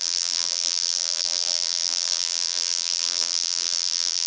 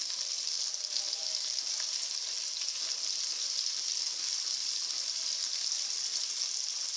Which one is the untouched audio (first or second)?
second